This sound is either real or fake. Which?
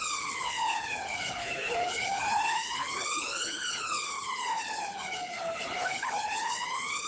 fake